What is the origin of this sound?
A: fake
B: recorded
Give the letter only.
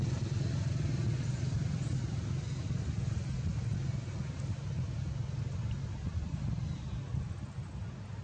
B